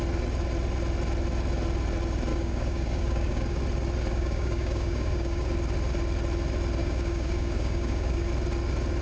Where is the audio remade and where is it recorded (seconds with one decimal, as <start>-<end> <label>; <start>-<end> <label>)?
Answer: 0.0-2.3 recorded; 2.3-3.6 remade; 3.6-4.1 recorded; 4.1-5.5 remade; 5.5-6.8 recorded; 6.8-8.3 remade; 8.3-9.0 recorded